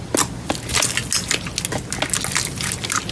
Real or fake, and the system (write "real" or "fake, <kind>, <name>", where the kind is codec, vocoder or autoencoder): real